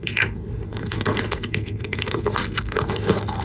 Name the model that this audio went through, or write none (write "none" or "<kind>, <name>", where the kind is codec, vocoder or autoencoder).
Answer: codec, SNAC